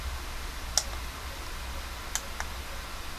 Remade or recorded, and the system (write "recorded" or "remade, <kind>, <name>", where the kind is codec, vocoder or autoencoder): recorded